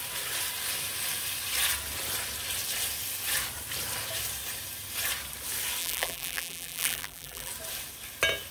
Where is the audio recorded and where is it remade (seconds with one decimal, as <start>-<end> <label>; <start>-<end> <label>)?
0.0-5.8 recorded; 5.8-7.5 remade; 7.5-8.5 recorded